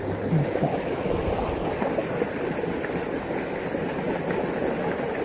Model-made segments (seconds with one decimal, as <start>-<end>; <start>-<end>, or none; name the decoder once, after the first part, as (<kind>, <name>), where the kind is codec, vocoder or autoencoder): 0.7-1.2 (autoencoder, DAC-VAE)